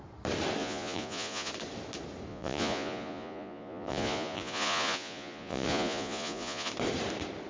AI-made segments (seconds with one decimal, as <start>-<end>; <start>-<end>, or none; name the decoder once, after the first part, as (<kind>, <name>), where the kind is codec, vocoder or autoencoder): 0.6-1.5 (vocoder, Vocos); 2.3-6.7